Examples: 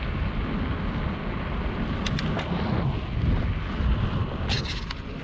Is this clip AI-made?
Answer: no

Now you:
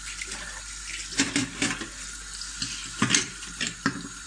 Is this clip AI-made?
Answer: yes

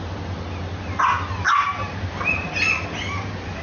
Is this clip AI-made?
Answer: no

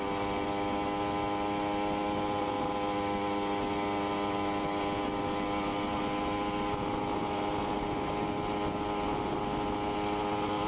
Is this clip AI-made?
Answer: no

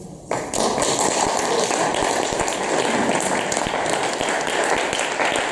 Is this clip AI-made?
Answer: no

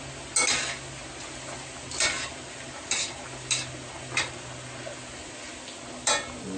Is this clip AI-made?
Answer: no